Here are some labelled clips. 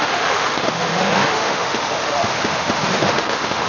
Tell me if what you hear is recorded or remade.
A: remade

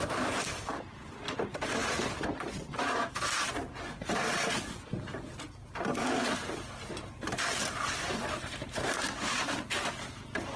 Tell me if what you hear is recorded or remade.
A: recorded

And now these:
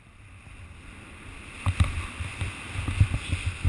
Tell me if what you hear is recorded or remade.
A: recorded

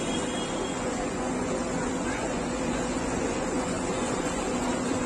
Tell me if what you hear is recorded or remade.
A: remade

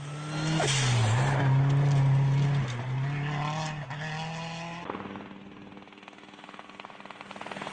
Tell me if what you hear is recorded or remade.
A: recorded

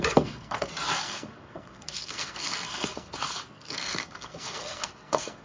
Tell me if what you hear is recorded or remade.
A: remade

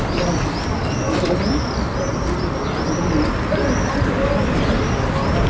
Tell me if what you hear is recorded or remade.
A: recorded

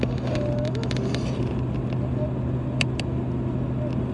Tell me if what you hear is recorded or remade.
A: recorded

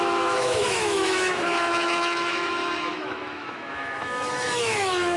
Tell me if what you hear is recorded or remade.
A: remade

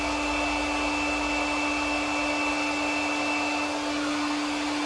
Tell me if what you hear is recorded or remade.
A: recorded